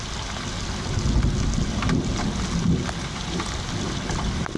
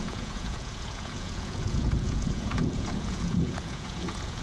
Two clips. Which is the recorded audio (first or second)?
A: first